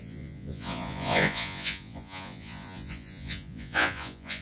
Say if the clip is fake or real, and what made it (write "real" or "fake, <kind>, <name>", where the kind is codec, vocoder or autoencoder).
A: fake, vocoder, Vocos